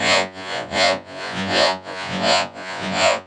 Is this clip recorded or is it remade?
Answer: remade